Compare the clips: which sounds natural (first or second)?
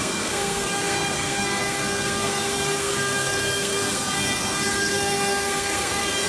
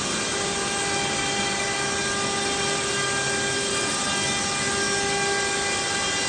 second